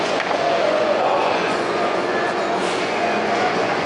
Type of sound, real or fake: fake